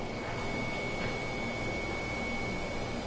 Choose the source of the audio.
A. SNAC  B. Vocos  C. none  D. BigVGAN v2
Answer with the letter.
C